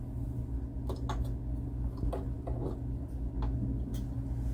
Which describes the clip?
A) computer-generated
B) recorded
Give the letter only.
B